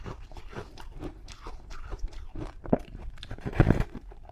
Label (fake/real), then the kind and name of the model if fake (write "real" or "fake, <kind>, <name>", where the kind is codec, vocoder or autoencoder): fake, vocoder, BigVGAN v2